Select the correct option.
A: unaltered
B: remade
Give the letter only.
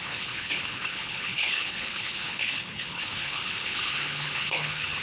B